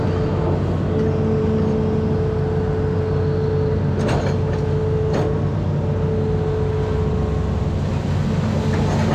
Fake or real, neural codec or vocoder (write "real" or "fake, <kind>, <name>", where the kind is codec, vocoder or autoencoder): real